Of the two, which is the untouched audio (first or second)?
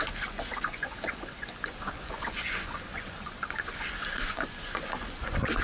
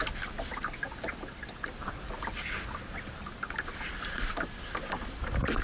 second